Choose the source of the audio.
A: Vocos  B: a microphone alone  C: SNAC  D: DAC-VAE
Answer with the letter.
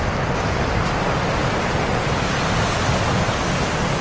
B